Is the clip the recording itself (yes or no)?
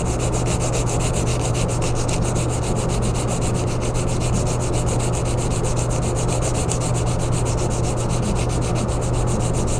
yes